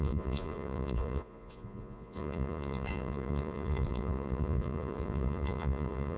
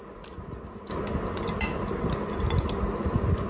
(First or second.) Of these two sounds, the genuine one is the second